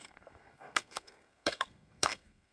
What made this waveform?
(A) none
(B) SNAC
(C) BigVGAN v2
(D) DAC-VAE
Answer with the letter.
B